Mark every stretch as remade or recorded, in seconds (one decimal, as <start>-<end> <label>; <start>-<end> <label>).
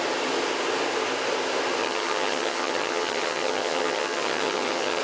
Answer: 0.0-1.8 recorded; 1.8-5.0 remade